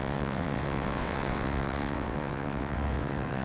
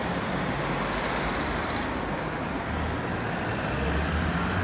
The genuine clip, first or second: second